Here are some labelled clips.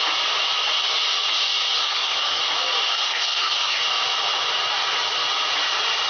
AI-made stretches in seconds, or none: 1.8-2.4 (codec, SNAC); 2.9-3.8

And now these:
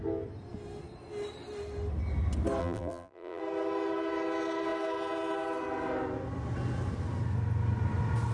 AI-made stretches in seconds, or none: 2.6-3.4 (vocoder, BigVGAN v2)

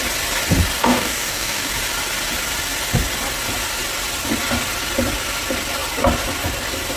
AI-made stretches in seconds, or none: 0.8-1.7 (codec, DAC)

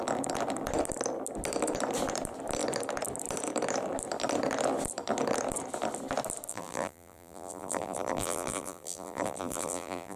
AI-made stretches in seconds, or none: 6.5-10.2 (vocoder, BigVGAN v2)

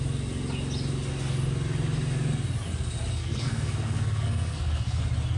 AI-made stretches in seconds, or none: 3.1-5.0 (codec, SNAC)